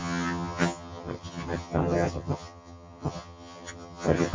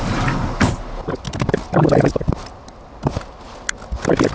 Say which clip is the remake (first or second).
first